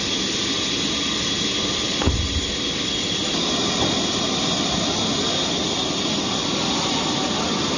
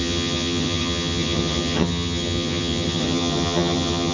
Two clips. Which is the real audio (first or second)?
first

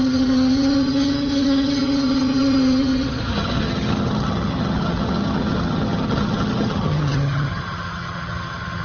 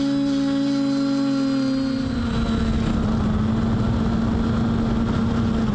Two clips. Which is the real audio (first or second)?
second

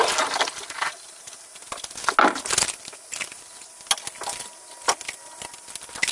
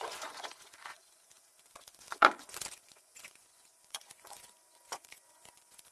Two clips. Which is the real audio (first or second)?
first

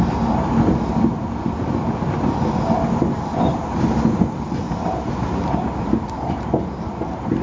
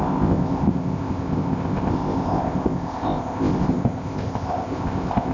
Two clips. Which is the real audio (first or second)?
first